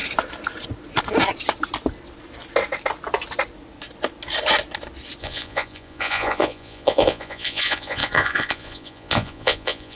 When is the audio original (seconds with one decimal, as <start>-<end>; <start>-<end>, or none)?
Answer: 0.0-5.2